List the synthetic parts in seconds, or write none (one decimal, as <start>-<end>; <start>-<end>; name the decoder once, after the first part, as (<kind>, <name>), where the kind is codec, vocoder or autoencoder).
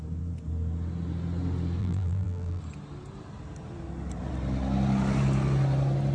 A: 1.8-2.6 (vocoder, BigVGAN v2)